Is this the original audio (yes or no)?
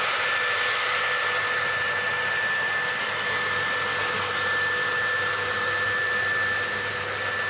yes